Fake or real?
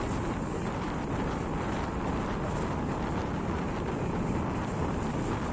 real